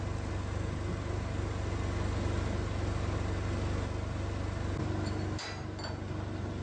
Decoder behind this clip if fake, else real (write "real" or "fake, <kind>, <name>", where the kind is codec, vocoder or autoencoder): real